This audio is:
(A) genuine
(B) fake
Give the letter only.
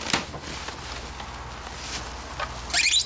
A